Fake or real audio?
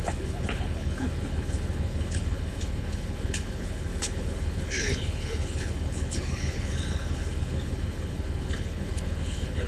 fake